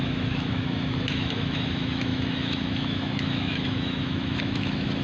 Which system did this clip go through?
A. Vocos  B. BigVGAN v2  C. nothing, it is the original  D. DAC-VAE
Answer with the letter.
D